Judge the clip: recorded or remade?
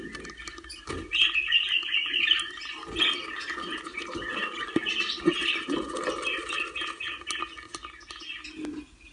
recorded